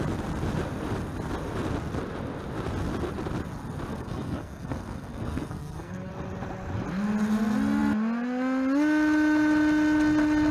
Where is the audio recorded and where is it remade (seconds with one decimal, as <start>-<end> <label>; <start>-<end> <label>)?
0.0-3.9 recorded; 3.9-6.1 remade; 6.1-10.5 recorded